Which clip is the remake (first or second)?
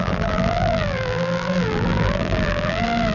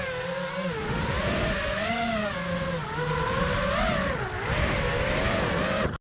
first